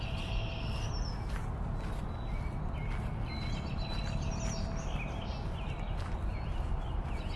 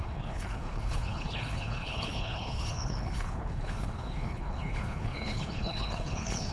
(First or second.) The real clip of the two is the first